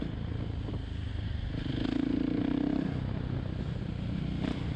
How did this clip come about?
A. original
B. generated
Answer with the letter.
A